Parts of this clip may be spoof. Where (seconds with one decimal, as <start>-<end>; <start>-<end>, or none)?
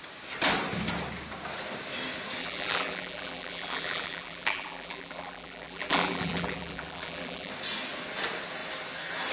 2.4-7.5